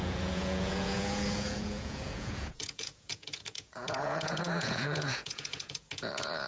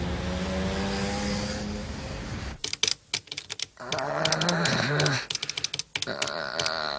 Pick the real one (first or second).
second